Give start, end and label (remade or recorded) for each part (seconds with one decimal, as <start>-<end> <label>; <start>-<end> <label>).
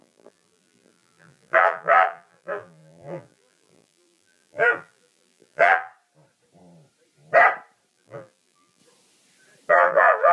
0.0-5.9 remade; 5.9-7.9 recorded; 7.9-8.8 remade; 8.8-9.7 recorded; 9.7-10.3 remade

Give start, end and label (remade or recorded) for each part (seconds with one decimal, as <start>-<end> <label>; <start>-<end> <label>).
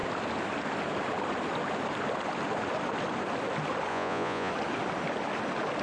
0.0-3.9 recorded; 3.9-4.5 remade; 4.5-5.8 recorded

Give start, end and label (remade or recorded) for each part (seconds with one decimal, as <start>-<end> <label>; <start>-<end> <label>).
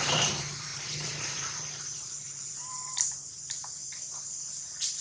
0.0-3.8 remade; 3.8-5.0 recorded